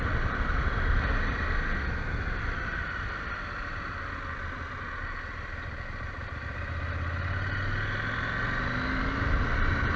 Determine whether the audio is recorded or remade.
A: recorded